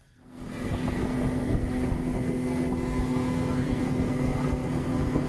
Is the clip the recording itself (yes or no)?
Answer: no